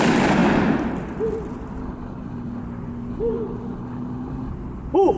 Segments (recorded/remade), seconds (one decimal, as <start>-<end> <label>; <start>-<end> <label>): 0.0-1.8 recorded; 1.8-2.6 remade; 2.6-3.1 recorded; 3.1-4.5 remade; 4.5-5.2 recorded